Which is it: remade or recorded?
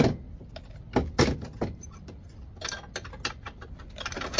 recorded